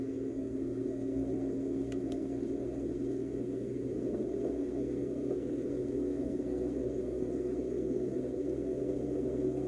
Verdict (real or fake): fake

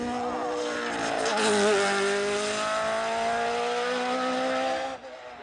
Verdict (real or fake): real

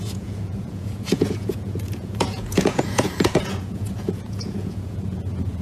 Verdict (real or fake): fake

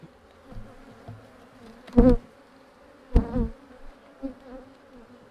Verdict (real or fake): real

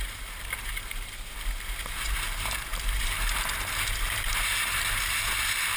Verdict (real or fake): fake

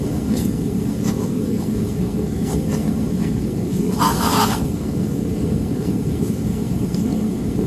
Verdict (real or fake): fake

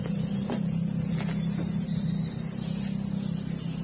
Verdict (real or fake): real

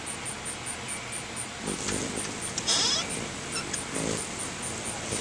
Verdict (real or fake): real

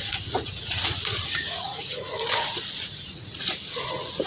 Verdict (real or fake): fake